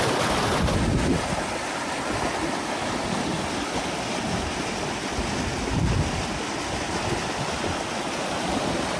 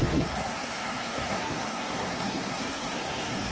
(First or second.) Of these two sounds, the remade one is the second